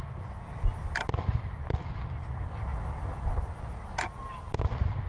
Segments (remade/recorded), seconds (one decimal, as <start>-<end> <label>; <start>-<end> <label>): 0.0-5.1 recorded